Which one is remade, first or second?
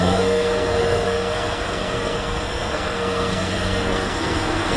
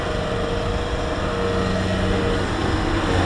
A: first